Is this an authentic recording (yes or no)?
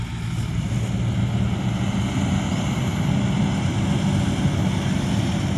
yes